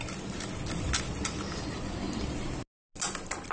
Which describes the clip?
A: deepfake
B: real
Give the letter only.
B